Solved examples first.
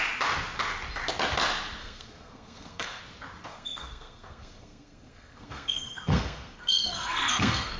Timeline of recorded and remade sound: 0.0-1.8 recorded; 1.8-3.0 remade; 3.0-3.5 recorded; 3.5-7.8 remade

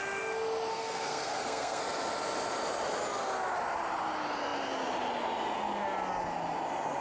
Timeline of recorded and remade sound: 0.0-0.7 recorded; 0.7-1.8 remade; 1.8-7.0 recorded